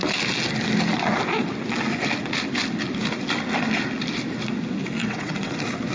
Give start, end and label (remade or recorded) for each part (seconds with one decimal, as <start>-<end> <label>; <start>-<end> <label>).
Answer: 0.0-5.0 recorded; 5.0-5.5 remade; 5.5-5.9 recorded